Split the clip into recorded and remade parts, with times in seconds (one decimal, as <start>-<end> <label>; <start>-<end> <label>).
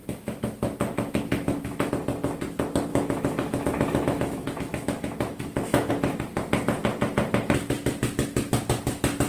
0.0-1.9 remade; 1.9-2.9 recorded; 2.9-5.9 remade; 5.9-9.3 recorded